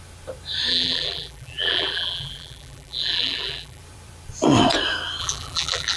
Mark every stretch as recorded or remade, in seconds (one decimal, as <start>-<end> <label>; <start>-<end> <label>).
0.0-0.7 recorded; 0.7-3.8 remade; 3.8-5.2 recorded; 5.2-6.0 remade